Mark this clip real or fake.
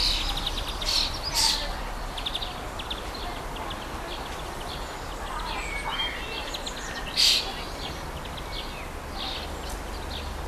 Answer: real